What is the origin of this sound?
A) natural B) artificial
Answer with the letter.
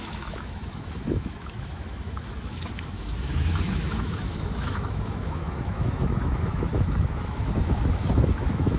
B